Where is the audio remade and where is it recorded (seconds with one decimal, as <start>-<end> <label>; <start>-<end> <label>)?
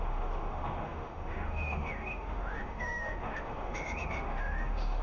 0.0-5.0 remade